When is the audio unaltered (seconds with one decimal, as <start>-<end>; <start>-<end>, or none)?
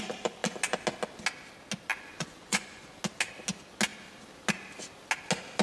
0.0-1.9; 3.0-5.6